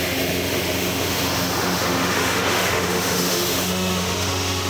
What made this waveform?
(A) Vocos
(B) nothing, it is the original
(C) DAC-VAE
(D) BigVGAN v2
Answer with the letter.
C